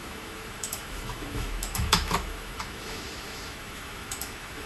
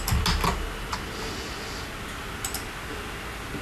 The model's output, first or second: first